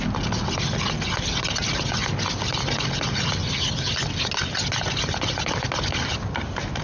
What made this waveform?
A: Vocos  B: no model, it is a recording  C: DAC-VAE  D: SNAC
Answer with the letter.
B